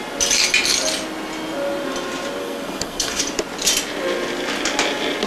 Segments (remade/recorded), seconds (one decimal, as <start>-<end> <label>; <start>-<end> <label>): 0.0-2.4 recorded; 2.4-3.2 remade; 3.2-5.3 recorded